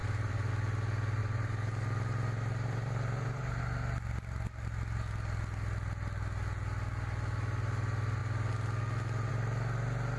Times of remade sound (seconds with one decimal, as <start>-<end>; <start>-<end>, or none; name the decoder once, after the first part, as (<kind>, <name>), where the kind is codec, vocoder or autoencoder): 0.0-0.5 (vocoder, BigVGAN v2); 1.2-3.6